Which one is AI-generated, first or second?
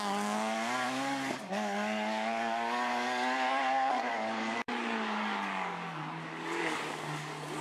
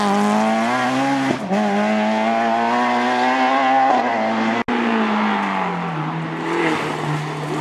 first